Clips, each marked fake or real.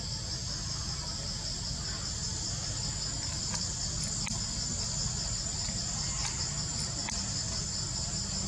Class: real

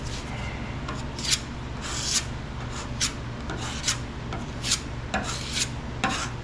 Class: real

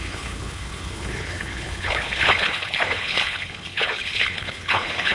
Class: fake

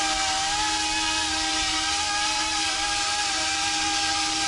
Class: real